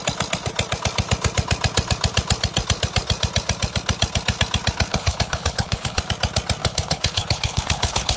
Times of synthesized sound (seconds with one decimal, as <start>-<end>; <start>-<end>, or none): 4.9-6.0; 6.6-8.2